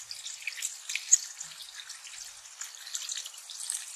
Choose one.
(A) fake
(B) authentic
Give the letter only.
B